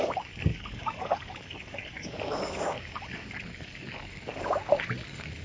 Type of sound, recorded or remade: remade